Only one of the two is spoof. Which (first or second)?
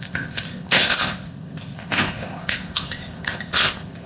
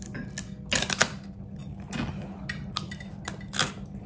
first